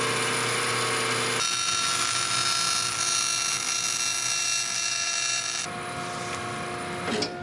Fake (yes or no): no